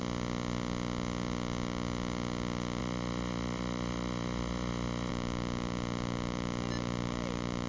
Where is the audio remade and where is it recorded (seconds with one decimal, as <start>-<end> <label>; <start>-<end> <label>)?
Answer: 0.0-2.8 recorded; 2.8-5.1 remade; 5.1-7.7 recorded